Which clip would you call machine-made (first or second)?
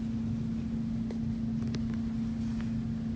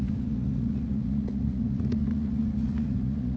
second